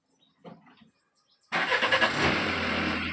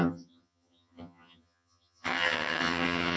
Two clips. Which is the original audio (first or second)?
first